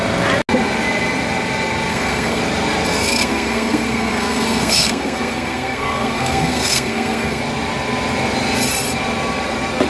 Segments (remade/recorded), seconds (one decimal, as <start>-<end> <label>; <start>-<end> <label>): 0.0-1.9 recorded; 1.9-2.4 remade; 2.4-2.9 recorded; 2.9-7.4 remade; 7.4-9.9 recorded